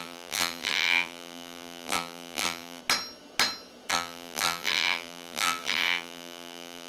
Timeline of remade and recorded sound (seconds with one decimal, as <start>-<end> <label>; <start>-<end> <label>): 0.0-2.8 remade; 2.8-3.9 recorded; 3.9-6.9 remade